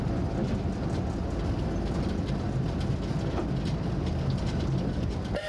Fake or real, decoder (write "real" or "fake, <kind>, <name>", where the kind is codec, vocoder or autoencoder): real